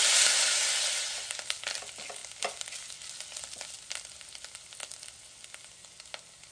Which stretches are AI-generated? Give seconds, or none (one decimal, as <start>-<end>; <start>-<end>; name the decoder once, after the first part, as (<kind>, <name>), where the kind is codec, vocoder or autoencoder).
none